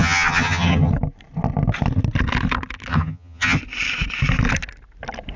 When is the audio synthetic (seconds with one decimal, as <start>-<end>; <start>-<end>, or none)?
0.0-0.9; 2.9-3.6